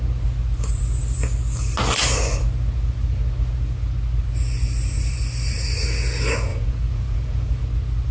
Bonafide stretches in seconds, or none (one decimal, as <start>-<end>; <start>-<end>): 0.0-6.5; 7.6-8.1